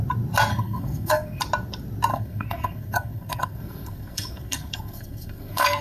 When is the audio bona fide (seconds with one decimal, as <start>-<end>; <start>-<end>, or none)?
0.0-0.5; 1.4-2.1